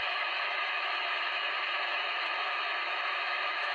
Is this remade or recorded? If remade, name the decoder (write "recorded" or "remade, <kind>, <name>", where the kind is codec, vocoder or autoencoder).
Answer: remade, autoencoder, DAC-VAE